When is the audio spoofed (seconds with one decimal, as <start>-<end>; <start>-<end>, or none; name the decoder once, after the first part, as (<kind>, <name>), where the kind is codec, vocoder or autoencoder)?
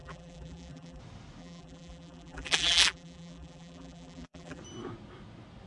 0.0-1.0 (vocoder, BigVGAN v2); 1.4-4.6